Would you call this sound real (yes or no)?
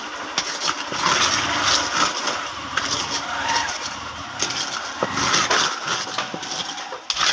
yes